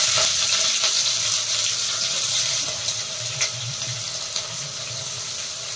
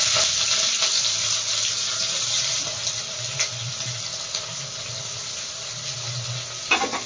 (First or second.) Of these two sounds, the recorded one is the second